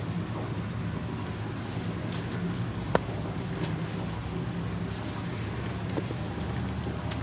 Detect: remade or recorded recorded